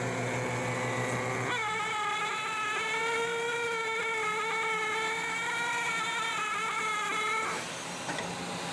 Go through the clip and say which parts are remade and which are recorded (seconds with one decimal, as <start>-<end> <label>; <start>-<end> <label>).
0.0-8.7 recorded